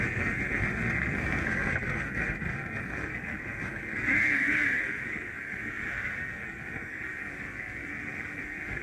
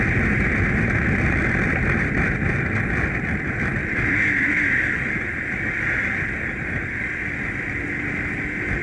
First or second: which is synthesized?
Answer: first